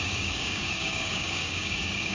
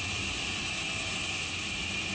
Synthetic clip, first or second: first